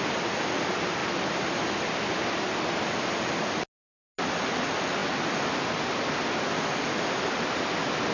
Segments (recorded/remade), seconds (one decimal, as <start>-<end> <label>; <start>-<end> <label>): 0.0-8.1 recorded